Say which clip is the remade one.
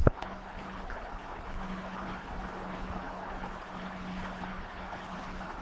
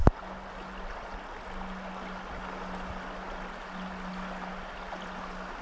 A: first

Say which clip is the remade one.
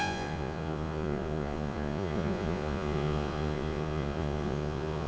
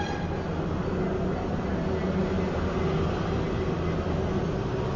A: first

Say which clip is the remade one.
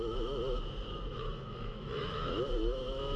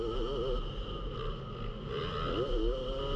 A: first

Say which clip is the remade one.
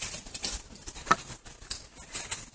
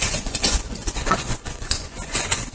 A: second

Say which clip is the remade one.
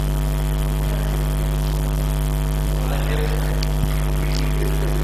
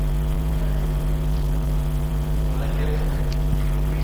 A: second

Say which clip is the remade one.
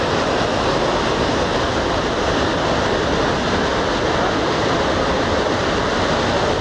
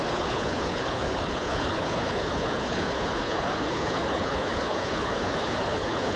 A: second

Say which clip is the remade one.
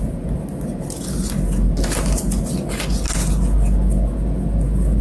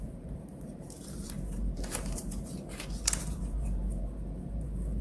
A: second